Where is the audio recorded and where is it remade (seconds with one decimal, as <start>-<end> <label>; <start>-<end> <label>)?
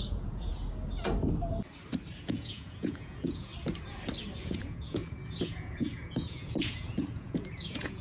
0.0-0.5 remade; 0.5-2.2 recorded; 2.2-3.5 remade; 3.5-4.4 recorded; 4.4-8.0 remade